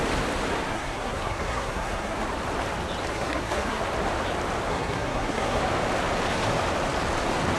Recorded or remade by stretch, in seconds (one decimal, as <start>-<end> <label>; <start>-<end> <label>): 0.0-0.7 recorded; 0.7-2.2 remade; 2.2-3.1 recorded; 3.1-3.8 remade; 3.8-4.7 recorded; 4.7-5.6 remade; 5.6-7.6 recorded